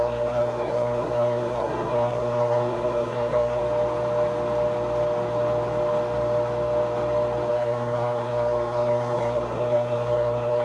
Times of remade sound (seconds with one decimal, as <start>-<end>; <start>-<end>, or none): 0.0-3.6; 7.5-10.6